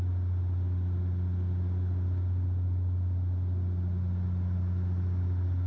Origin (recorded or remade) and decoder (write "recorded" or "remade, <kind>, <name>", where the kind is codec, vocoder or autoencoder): recorded